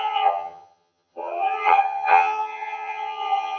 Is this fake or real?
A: fake